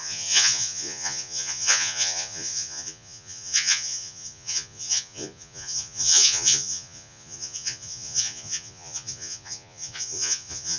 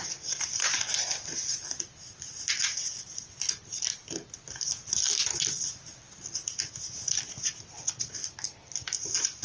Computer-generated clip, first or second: first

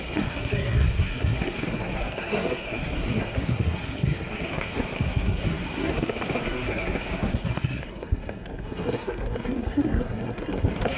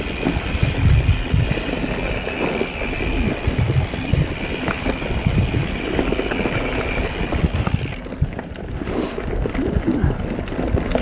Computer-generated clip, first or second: first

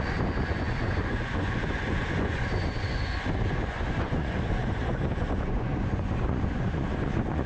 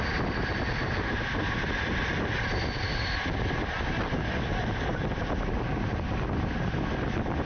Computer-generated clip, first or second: first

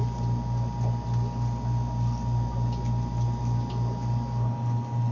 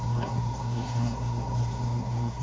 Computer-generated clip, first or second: second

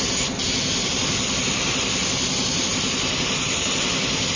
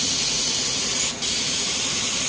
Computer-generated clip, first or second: second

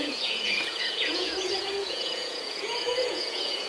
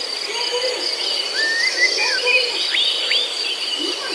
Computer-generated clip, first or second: first